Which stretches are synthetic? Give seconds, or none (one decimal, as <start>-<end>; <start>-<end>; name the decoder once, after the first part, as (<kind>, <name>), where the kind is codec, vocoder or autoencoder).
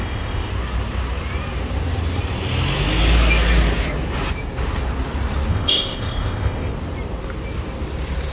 0.0-0.5 (codec, ZipCodec); 5.5-6.7